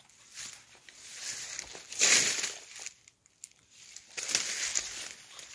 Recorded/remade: recorded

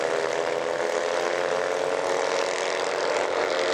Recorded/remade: recorded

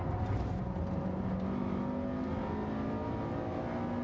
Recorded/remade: recorded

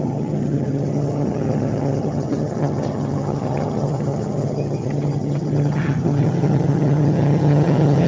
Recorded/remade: remade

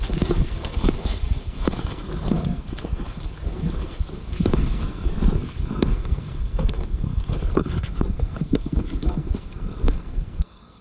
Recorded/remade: remade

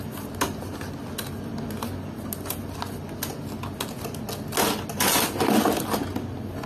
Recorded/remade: recorded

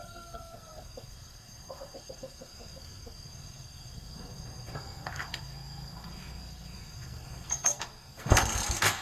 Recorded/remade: remade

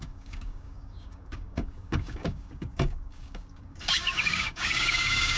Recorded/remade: remade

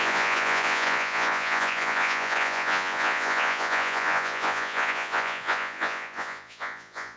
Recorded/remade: remade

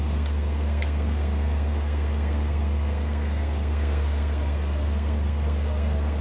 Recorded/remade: remade